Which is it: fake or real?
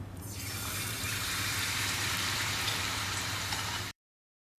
fake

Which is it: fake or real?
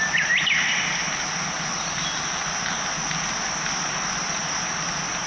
real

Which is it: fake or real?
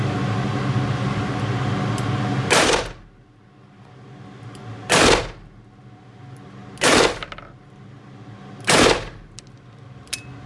real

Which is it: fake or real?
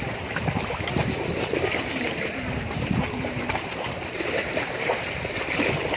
fake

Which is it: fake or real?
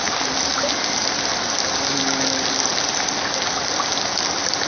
real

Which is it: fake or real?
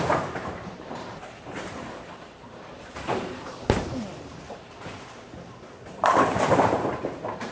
fake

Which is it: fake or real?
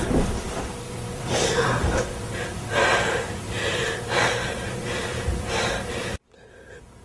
fake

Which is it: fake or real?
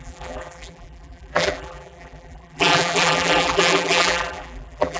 fake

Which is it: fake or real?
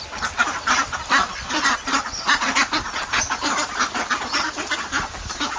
real